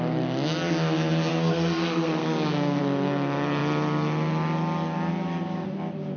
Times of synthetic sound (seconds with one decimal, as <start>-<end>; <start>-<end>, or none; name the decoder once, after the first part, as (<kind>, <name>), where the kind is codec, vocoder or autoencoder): 1.3-2.8 (codec, SNAC)